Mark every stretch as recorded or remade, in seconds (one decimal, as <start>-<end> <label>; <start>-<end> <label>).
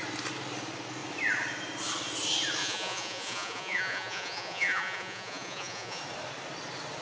0.0-2.6 recorded; 2.6-6.0 remade; 6.0-7.0 recorded